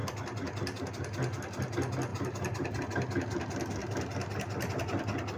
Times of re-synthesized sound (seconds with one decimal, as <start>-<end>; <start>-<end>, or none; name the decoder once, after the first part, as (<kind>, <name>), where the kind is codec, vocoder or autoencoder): 0.0-0.9 (vocoder, BigVGAN v2); 2.1-2.8; 3.8-4.8